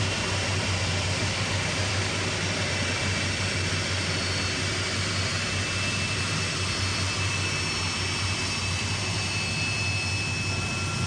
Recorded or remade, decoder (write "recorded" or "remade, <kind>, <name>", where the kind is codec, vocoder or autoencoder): recorded